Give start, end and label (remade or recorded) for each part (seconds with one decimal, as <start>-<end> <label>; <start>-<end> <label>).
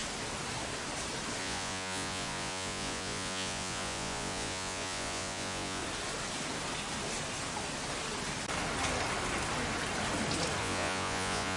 0.0-1.4 recorded; 1.4-5.8 remade; 5.8-10.6 recorded; 10.6-11.6 remade